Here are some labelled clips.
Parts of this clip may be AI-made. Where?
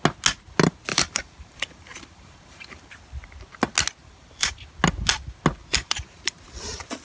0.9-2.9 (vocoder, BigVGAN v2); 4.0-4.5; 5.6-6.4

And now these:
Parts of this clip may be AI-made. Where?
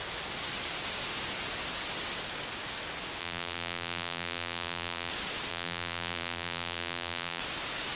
3.2-5.1 (vocoder, BigVGAN v2); 5.5-7.4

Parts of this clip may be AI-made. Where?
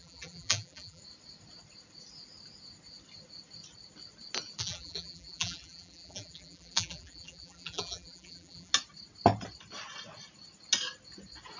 0.0-1.0 (vocoder, BigVGAN v2); 4.6-8.7